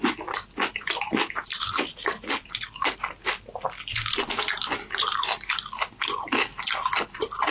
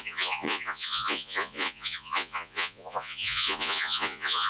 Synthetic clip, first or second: second